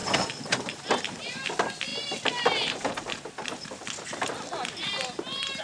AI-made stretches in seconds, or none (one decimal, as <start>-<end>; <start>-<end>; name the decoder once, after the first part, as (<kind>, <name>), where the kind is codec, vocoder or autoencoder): none